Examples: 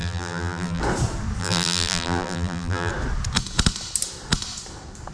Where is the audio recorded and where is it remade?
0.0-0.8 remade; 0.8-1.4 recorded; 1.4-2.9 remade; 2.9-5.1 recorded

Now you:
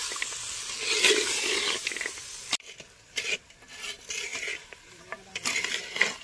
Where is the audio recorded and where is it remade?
0.0-4.3 recorded; 4.3-5.5 remade; 5.5-6.2 recorded

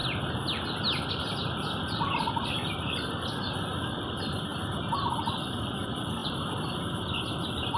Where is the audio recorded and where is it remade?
0.0-6.2 recorded; 6.2-7.8 remade

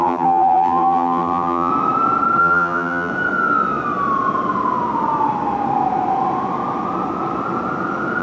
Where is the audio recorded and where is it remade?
0.0-1.7 remade; 1.7-2.4 recorded; 2.4-3.1 remade; 3.1-8.2 recorded

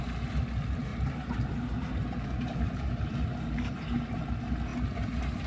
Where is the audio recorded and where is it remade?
0.0-0.9 recorded; 0.9-4.2 remade; 4.2-4.7 recorded; 4.7-5.5 remade